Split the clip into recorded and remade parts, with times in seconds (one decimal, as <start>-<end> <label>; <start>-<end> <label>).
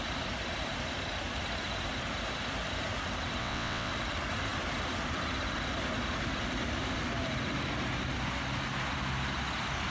0.0-3.4 recorded; 3.4-3.9 remade; 3.9-9.9 recorded